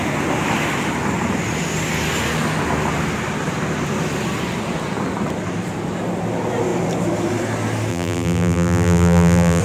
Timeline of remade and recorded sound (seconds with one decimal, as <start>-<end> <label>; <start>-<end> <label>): 0.0-7.9 recorded; 7.9-9.6 remade